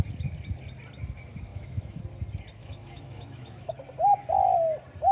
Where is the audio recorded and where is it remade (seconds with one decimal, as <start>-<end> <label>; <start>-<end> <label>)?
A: 0.0-1.5 recorded; 1.5-2.0 remade; 2.0-2.6 recorded; 2.6-3.7 remade; 3.7-5.1 recorded